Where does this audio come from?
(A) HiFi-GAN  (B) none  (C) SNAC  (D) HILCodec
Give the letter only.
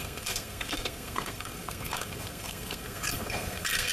C